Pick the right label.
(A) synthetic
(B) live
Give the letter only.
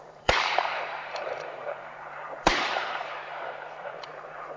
A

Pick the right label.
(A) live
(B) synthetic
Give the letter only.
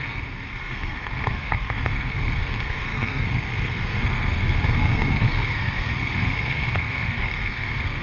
B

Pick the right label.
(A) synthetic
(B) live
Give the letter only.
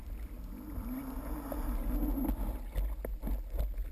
B